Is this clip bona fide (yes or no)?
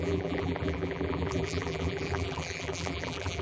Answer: no